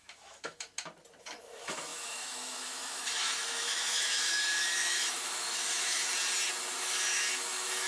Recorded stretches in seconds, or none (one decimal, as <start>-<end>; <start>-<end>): 0.7-1.2; 6.1-6.8